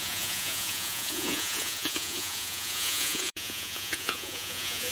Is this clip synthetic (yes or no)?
yes